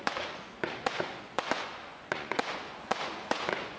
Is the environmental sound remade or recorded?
remade